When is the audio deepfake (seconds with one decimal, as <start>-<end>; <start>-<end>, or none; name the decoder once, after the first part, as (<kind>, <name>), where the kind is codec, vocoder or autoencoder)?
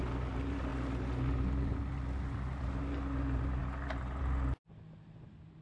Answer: none